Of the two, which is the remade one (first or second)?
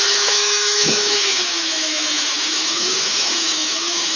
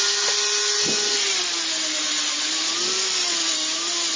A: first